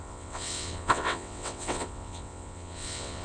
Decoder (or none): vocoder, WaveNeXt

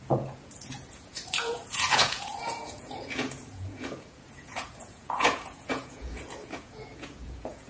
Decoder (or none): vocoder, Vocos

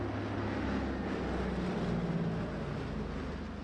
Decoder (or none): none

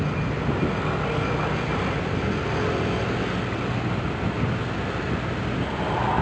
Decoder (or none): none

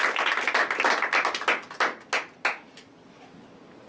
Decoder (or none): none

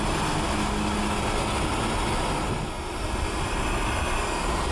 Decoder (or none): none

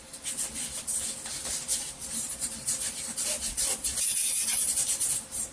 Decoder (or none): none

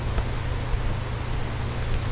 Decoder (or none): none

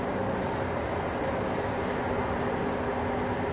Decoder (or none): none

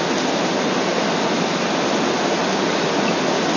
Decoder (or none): none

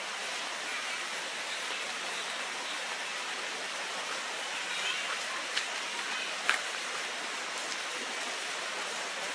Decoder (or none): none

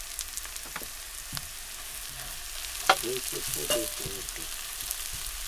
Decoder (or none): none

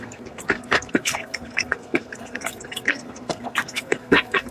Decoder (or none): codec, SNAC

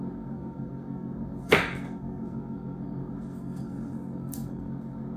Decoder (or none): codec, SNAC